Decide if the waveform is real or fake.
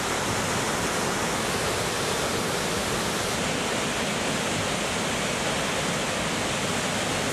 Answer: real